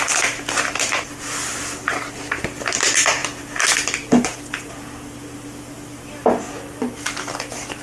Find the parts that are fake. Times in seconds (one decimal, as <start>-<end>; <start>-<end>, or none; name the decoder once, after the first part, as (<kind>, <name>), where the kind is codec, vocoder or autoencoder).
none